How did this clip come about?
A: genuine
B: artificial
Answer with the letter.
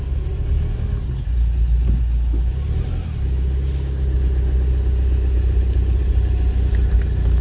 A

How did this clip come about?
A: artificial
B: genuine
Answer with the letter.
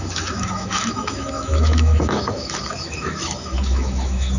A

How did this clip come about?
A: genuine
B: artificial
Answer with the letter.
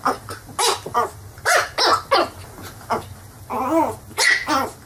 A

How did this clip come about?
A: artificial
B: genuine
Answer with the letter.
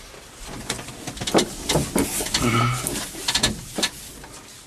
B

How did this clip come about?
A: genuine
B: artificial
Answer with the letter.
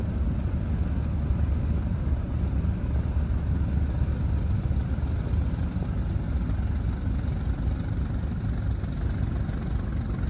A